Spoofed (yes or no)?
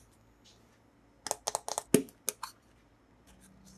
no